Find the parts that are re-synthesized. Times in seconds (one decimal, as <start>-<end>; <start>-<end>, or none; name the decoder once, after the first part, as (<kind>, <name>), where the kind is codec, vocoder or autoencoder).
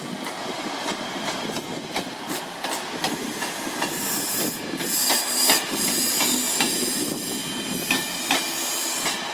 0.4-1.5 (vocoder, BigVGAN v2)